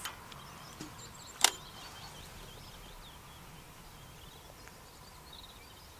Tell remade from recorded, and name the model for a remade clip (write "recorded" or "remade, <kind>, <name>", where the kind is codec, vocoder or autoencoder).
recorded